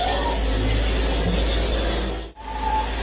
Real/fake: real